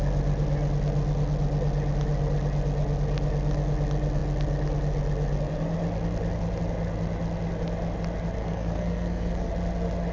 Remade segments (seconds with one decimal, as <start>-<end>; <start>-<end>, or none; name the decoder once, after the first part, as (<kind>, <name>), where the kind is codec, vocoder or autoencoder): 8.4-9.5 (codec, SNAC)